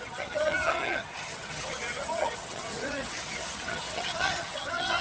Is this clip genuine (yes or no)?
no